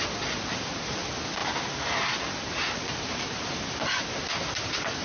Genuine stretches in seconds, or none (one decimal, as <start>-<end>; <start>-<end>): 0.0-5.0